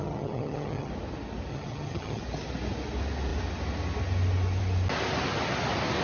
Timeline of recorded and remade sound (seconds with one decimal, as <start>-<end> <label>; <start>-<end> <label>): 0.0-0.9 remade; 0.9-1.5 recorded; 1.5-2.2 remade; 2.2-6.0 recorded

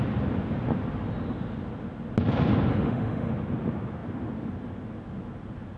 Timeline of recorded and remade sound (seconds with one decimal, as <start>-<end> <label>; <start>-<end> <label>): 0.0-2.7 recorded; 2.7-3.3 remade; 3.3-5.8 recorded

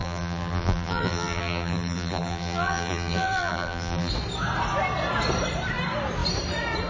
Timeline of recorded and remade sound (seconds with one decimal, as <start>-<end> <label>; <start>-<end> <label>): 0.0-4.1 remade; 4.1-6.9 recorded

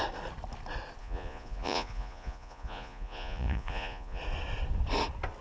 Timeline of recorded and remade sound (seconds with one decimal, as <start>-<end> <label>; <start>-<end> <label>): 0.0-1.0 recorded; 1.0-4.2 remade; 4.2-5.4 recorded

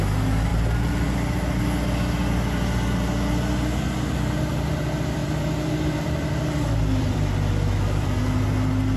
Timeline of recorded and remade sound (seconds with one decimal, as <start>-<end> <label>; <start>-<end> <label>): 0.0-0.5 recorded; 0.5-1.6 remade; 1.6-5.2 recorded; 5.2-8.2 remade; 8.2-9.0 recorded

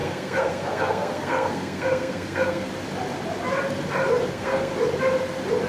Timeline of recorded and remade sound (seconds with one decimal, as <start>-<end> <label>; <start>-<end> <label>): 0.0-2.7 remade; 2.7-4.3 recorded; 4.3-4.7 remade; 4.7-5.7 recorded